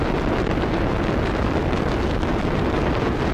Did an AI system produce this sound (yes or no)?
no